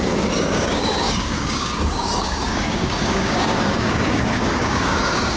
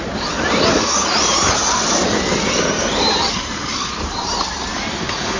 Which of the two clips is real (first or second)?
second